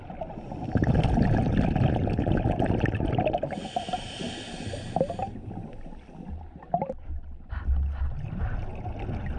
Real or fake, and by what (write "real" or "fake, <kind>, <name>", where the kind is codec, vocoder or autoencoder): real